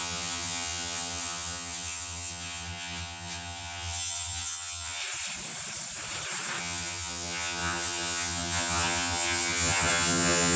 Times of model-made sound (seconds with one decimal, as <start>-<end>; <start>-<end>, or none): 0.0-5.0; 6.6-10.6